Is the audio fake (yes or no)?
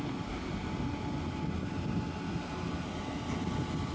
no